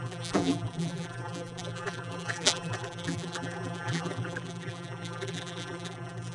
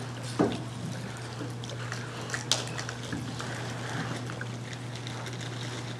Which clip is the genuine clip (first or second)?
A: second